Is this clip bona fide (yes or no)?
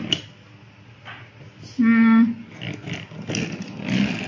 yes